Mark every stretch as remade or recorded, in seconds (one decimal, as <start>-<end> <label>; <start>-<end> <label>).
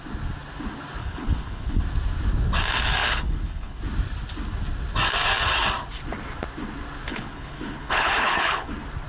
0.0-1.0 recorded; 1.0-1.8 remade; 1.8-3.0 recorded; 3.0-3.8 remade; 3.8-7.1 recorded; 7.1-8.7 remade; 8.7-9.1 recorded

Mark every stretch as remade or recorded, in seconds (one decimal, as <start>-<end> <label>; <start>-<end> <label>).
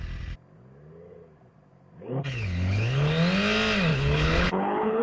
0.0-2.2 recorded; 2.2-3.1 remade; 3.1-3.9 recorded; 3.9-5.0 remade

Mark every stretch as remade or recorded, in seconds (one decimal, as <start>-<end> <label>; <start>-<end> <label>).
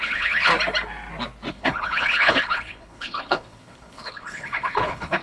0.0-0.5 remade; 0.5-1.5 recorded; 1.5-5.2 remade